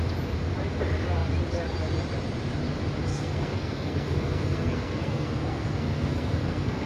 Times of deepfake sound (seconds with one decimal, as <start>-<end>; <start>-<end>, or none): 3.1-6.9